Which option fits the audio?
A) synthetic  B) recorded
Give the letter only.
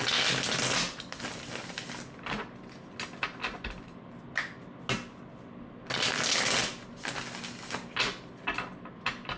B